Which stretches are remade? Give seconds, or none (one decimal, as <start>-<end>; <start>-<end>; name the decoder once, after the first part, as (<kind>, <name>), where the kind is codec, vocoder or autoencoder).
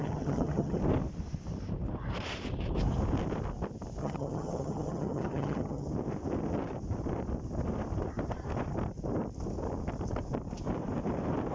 0.0-0.8 (vocoder, HiFi-GAN); 4.0-5.9